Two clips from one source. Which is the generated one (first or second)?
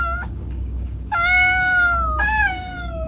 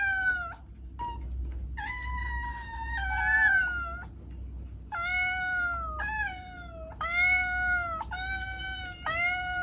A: first